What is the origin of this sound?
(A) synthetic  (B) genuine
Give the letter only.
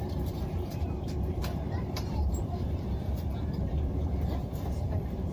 A